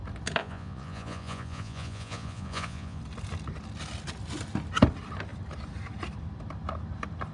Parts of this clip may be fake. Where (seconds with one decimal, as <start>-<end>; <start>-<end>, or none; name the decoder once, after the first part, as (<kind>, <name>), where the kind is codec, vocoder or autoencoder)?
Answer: 0.4-3.0 (vocoder, Vocos)

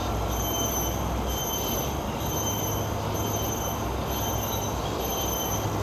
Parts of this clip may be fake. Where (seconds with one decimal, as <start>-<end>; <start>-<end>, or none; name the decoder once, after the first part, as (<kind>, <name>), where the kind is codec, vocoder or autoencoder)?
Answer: none